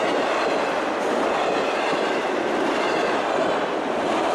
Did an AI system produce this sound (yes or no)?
no